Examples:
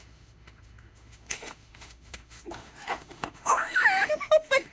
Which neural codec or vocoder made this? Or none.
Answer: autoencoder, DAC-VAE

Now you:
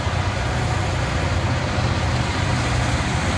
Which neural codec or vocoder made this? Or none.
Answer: none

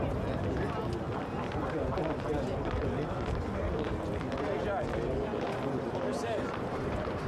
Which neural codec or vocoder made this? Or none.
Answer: none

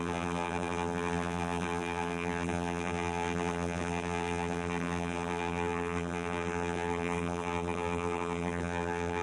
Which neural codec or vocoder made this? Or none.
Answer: vocoder, BigVGAN v2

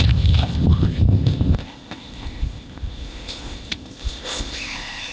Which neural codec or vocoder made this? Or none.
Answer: codec, ZipCodec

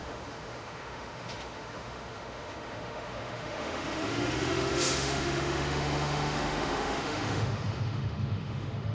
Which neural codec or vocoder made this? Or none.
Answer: autoencoder, DAC-VAE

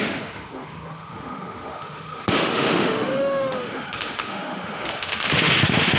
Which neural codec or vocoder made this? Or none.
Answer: autoencoder, DAC-VAE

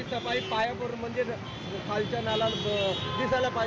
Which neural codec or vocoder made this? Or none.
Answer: none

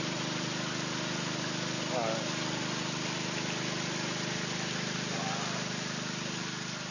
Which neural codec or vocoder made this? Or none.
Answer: none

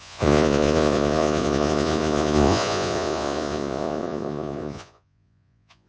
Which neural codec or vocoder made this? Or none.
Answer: vocoder, Vocos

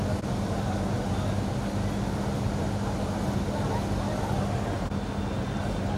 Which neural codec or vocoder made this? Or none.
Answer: none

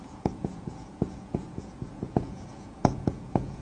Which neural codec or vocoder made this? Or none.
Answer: vocoder, Vocos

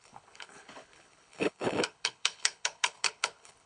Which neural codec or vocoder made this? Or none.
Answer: codec, HILCodec